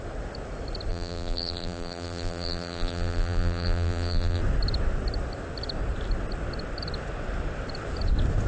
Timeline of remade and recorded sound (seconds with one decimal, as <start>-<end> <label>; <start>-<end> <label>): 0.0-0.9 recorded; 0.9-4.4 remade; 4.4-8.5 recorded